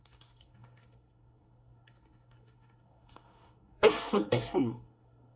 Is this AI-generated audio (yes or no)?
yes